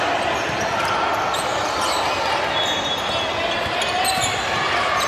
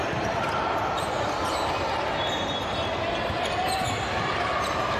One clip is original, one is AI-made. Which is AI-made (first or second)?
second